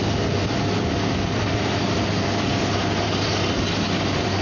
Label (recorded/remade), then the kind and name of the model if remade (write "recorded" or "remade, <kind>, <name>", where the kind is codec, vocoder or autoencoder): remade, vocoder, BigVGAN v2